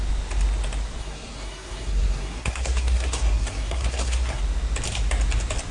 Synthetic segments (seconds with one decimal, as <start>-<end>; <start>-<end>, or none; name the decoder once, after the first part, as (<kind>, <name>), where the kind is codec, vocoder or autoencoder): 1.0-4.4 (codec, SNAC)